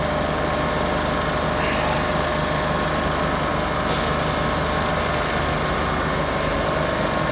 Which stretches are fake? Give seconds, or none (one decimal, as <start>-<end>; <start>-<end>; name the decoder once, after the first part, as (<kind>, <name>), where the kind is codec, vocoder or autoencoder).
none